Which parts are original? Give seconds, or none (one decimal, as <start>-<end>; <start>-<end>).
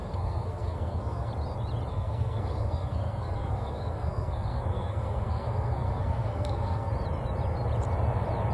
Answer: 1.3-1.9; 6.9-8.5